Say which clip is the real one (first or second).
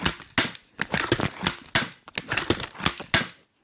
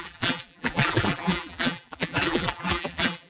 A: first